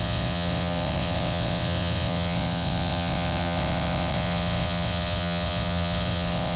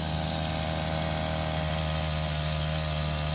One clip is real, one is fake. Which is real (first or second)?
second